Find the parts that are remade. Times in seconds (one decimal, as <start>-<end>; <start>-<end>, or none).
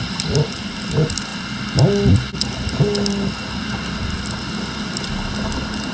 none